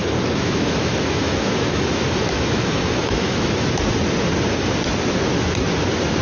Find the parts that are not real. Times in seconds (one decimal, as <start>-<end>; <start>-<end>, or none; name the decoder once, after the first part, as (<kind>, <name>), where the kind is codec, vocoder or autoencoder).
0.0-3.7 (autoencoder, DAC-VAE)